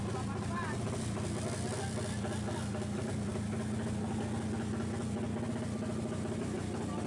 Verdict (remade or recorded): recorded